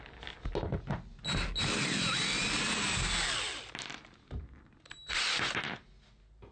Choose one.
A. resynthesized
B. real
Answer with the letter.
B